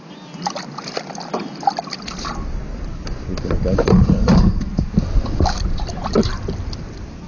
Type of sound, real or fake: fake